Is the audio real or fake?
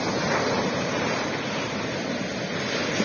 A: real